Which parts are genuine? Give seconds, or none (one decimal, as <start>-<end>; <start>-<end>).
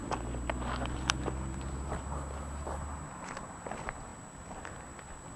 0.0-5.4